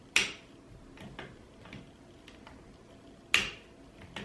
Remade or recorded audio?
recorded